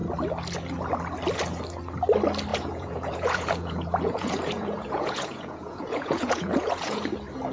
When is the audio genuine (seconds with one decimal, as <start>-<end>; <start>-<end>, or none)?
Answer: 0.0-2.5; 7.0-7.5